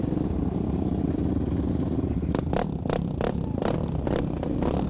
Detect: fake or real fake